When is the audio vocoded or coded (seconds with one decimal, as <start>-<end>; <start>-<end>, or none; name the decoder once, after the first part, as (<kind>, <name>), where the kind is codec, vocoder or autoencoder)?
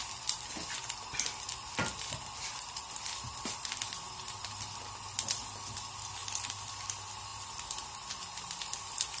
none